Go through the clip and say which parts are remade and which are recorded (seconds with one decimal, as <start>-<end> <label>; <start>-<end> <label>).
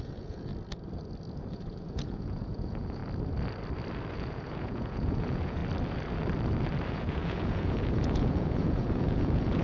0.0-0.5 remade; 0.5-1.5 recorded; 1.5-3.0 remade; 3.0-4.1 recorded; 4.1-5.6 remade; 5.6-6.9 recorded; 6.9-9.6 remade